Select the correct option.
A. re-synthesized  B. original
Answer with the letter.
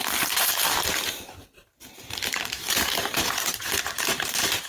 A